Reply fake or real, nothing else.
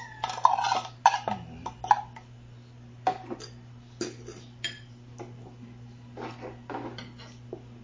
real